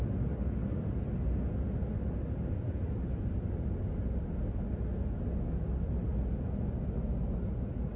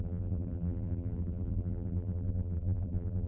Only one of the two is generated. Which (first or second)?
second